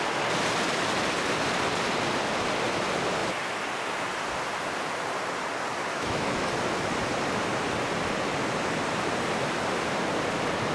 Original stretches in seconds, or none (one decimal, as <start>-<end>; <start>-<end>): 0.0-5.9; 6.5-10.7